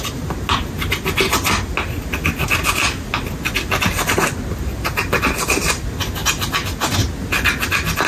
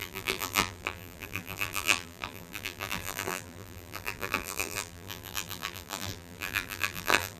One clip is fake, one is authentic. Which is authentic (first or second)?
first